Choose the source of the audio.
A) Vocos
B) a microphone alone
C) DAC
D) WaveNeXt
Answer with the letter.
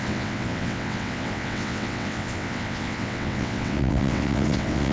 D